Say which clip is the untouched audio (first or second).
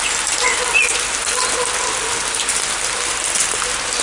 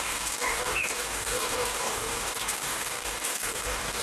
first